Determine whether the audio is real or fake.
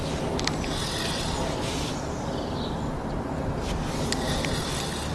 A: real